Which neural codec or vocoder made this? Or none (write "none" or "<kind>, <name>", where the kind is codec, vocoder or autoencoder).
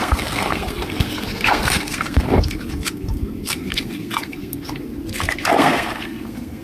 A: codec, SNAC